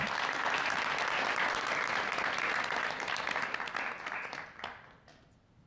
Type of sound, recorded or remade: recorded